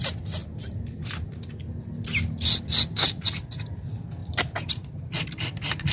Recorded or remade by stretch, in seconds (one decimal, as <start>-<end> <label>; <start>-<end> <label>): 0.0-0.4 recorded; 0.4-1.1 remade; 1.1-4.2 recorded; 4.2-5.9 remade